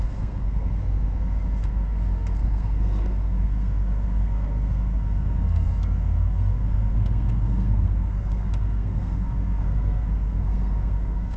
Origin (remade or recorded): remade